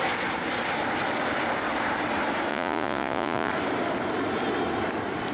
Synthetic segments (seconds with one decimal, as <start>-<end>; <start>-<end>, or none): 2.5-3.5